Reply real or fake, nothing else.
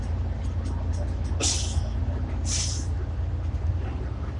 real